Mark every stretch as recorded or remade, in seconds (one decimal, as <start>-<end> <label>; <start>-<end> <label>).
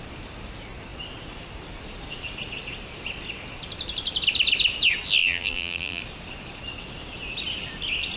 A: 0.0-5.2 recorded; 5.2-6.0 remade; 6.0-8.2 recorded